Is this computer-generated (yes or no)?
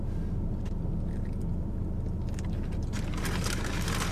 no